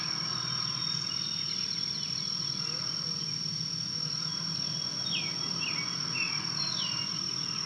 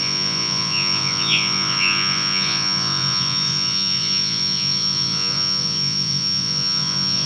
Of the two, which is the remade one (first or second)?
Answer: second